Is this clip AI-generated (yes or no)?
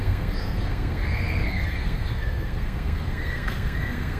yes